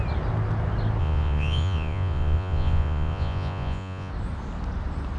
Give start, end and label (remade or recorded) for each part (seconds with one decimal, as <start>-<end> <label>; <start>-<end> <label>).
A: 0.0-1.0 recorded; 1.0-4.1 remade; 4.1-5.2 recorded